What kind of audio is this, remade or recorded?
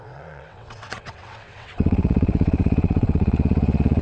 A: remade